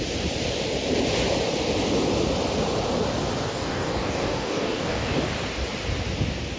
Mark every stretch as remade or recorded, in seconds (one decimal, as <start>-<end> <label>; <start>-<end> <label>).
0.0-3.5 recorded; 3.5-5.3 remade; 5.3-6.6 recorded